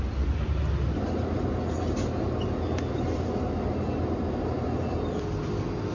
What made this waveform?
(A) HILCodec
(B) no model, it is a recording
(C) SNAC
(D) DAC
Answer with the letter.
B